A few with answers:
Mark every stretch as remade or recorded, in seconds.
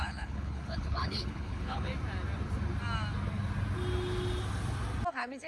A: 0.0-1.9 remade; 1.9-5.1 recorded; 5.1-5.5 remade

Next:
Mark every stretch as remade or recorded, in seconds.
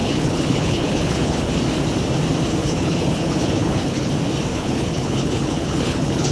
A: 0.0-1.5 remade; 1.5-2.6 recorded; 2.6-4.1 remade; 4.1-4.5 recorded; 4.5-6.3 remade